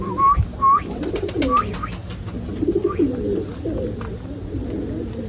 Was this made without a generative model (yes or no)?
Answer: yes